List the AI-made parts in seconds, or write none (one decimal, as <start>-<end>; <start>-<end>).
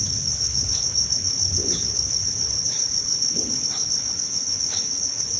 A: 0.0-5.4